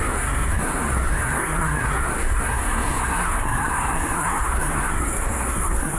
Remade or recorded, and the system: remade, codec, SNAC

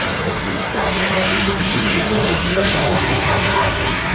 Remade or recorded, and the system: remade, codec, SNAC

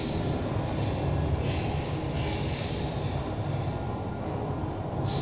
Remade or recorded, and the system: recorded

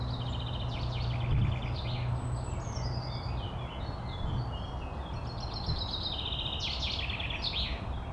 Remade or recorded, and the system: recorded